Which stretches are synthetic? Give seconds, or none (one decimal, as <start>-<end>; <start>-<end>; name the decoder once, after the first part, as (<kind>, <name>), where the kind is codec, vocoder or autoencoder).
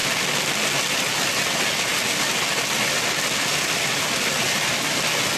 none